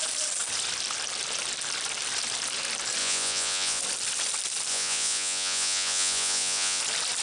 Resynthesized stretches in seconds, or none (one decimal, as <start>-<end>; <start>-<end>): 3.0-3.8; 4.7-6.8